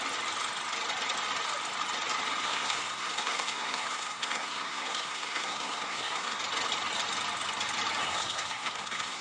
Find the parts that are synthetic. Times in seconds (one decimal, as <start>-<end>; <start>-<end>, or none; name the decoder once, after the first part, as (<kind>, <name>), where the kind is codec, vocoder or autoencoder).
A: 2.4-6.4 (codec, SNAC); 8.0-9.2